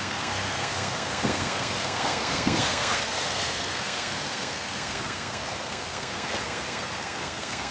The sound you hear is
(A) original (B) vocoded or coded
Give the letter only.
B